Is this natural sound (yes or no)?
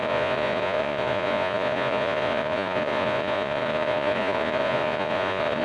no